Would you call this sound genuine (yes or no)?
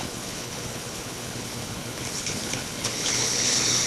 no